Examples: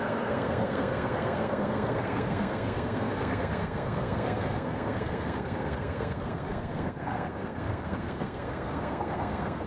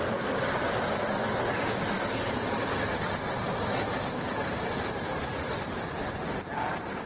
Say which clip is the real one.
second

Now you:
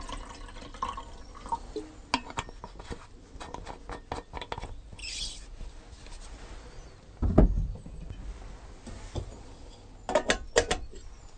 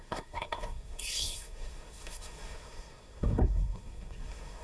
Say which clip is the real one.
first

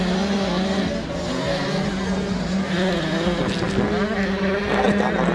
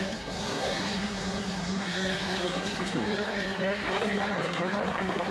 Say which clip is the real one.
first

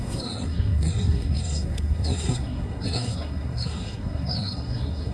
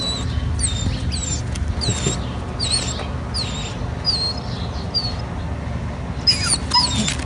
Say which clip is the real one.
second